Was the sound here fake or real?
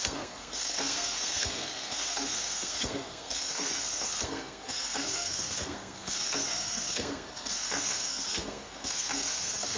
fake